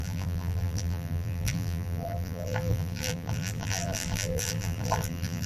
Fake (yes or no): yes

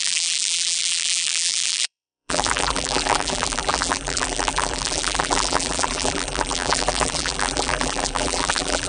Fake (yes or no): yes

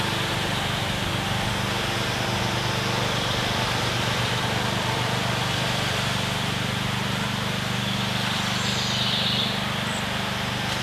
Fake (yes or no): no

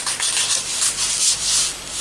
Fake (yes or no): no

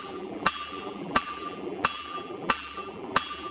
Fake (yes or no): yes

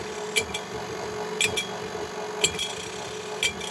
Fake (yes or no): no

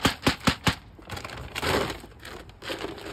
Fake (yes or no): no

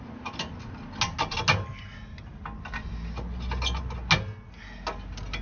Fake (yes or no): no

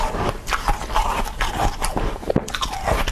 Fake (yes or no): no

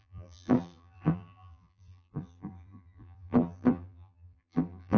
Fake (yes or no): yes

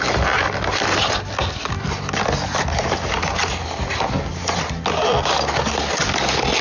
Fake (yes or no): no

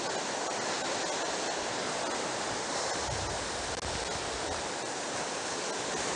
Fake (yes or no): no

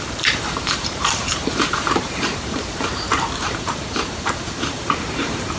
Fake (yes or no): yes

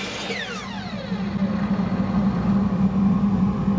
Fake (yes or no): no